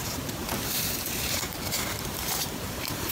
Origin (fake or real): fake